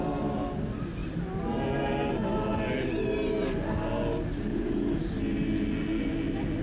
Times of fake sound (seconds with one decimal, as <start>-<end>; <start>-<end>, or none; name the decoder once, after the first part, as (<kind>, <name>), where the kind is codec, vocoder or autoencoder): 4.5-5.1 (vocoder, Vocos)